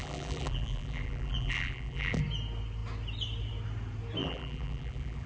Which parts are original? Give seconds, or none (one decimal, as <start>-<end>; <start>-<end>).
2.2-4.2